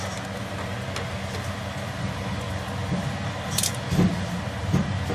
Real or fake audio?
real